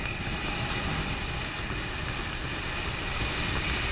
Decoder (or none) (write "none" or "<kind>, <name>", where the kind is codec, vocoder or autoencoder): none